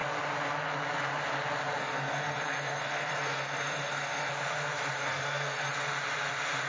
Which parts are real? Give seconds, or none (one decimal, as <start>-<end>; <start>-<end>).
0.0-1.8; 4.3-5.0; 5.7-6.7